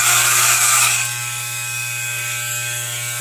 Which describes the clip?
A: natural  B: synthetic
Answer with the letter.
B